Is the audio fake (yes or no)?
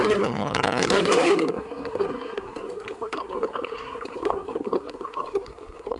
yes